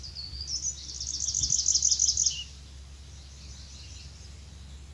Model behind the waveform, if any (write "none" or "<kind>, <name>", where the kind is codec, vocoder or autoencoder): none